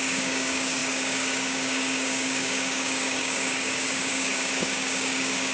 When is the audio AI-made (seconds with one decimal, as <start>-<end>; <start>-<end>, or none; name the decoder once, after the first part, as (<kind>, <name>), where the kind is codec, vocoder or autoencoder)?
0.0-5.5 (codec, DAC)